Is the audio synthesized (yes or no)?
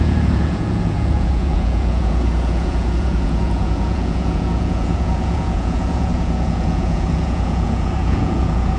yes